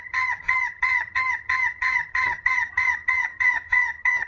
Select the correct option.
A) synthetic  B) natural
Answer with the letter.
A